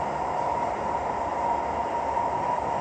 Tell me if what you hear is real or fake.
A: real